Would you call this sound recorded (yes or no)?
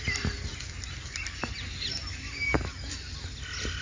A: yes